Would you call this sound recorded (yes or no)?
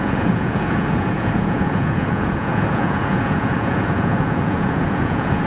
no